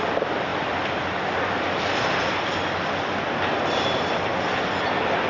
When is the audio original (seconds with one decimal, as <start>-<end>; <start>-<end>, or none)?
0.0-5.3

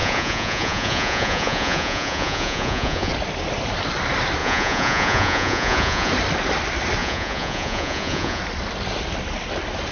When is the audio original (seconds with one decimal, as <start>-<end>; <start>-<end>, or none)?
3.1-4.4; 6.1-7.0; 8.4-9.9